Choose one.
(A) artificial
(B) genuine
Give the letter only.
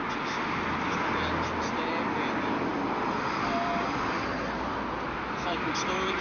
B